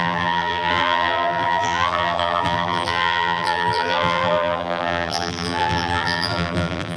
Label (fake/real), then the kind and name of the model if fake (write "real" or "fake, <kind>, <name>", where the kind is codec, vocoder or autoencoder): fake, vocoder, BigVGAN v2